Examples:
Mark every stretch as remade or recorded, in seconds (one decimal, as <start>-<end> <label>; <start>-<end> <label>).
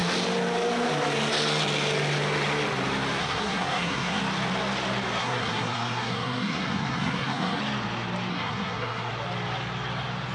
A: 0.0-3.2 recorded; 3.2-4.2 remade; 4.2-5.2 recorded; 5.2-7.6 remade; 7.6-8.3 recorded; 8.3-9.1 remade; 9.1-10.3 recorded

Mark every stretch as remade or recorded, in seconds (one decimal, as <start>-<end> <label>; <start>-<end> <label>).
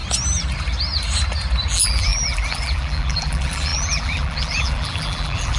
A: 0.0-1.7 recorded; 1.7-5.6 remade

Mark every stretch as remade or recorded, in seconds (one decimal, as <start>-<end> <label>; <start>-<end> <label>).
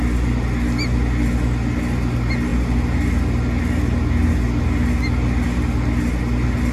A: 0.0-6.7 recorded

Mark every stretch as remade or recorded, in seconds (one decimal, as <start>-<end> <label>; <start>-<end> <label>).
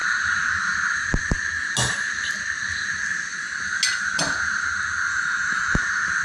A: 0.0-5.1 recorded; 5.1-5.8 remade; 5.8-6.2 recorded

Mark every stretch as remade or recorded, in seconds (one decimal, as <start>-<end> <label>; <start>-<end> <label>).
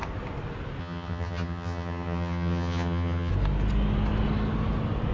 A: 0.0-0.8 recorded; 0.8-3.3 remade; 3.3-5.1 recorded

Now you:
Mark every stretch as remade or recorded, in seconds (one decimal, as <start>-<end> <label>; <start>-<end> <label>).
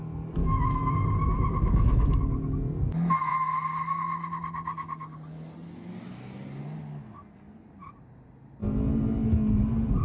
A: 0.0-0.4 recorded; 0.4-2.2 remade; 2.2-10.0 recorded